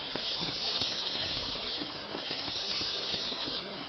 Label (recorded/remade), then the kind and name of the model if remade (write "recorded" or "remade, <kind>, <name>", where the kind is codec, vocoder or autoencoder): remade, codec, SNAC